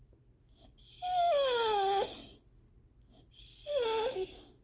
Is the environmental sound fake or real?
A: real